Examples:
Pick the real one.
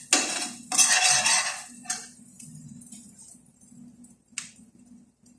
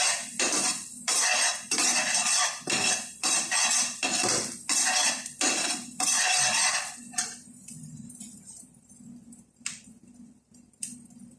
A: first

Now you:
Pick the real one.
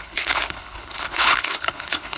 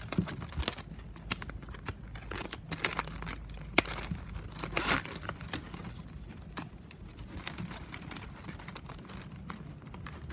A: second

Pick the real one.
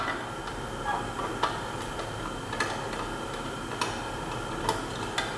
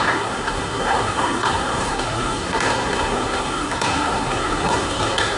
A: first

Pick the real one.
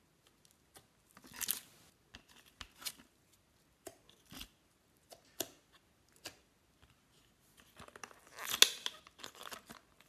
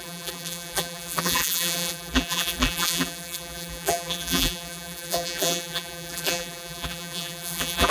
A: first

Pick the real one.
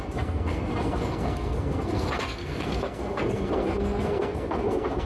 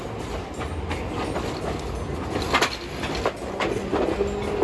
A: second